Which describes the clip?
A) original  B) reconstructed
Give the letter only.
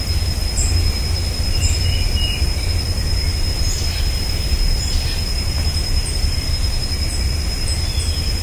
A